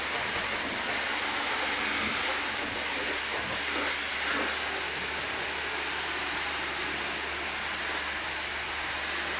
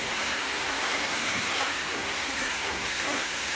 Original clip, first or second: first